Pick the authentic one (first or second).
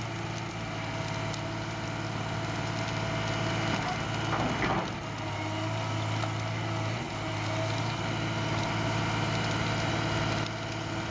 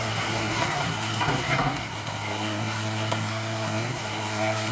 first